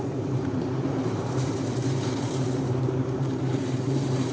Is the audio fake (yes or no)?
yes